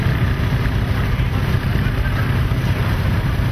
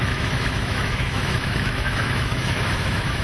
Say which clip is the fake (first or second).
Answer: second